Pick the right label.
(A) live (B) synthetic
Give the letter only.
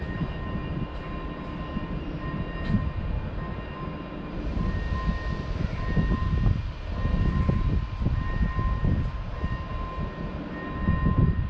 A